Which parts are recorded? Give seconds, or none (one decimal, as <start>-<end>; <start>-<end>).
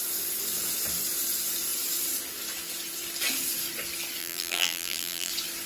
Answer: 0.0-4.2; 5.3-5.7